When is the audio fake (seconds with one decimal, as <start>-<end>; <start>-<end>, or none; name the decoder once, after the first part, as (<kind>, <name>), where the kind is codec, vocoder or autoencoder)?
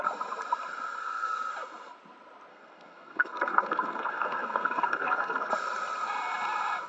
1.0-1.5 (codec, SNAC); 2.5-5.5